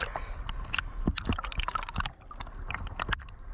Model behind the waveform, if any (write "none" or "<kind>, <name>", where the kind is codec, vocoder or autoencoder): none